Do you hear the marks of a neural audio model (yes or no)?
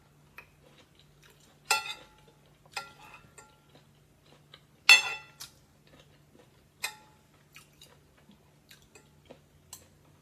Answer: no